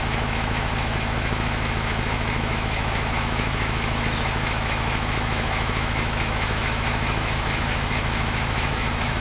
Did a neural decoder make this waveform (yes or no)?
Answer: yes